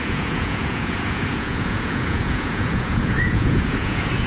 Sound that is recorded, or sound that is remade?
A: remade